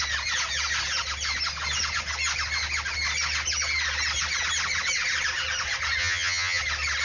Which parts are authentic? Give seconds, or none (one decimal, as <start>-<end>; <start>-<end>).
0.0-6.0; 6.6-7.0